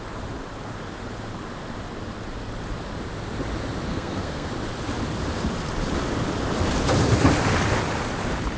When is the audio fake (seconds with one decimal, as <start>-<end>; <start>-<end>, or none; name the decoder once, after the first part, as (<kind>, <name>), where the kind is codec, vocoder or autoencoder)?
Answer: 3.9-4.5 (codec, SNAC)